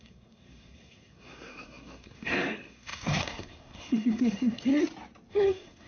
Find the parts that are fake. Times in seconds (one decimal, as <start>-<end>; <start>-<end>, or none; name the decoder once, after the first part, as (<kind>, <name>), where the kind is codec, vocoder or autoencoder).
0.0-4.7 (codec, SNAC); 5.3-5.9